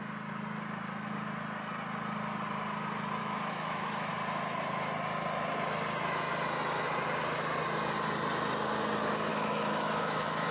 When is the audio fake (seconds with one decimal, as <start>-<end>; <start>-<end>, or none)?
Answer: 3.2-4.1; 9.3-10.5